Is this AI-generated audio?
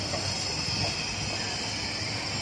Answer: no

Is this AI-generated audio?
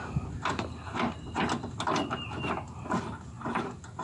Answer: no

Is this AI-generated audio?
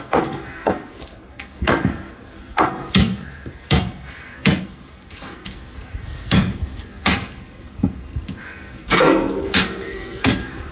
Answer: yes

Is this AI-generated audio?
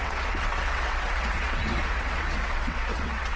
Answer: yes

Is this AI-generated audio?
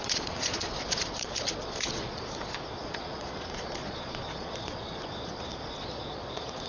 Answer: yes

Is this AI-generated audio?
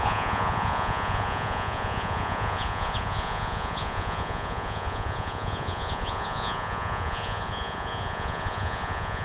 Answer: yes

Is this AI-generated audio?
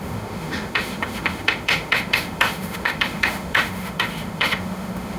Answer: yes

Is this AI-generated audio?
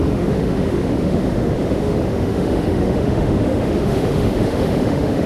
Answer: yes